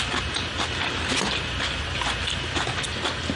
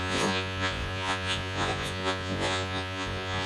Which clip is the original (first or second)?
first